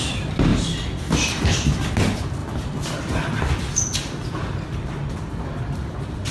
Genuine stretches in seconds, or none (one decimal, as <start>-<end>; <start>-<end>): 0.0-6.3